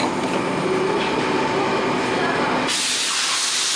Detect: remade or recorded recorded